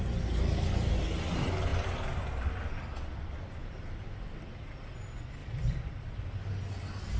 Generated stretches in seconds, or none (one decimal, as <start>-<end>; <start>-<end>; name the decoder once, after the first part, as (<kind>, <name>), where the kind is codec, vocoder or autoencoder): 3.6-4.1 (vocoder, BigVGAN v2); 5.4-5.9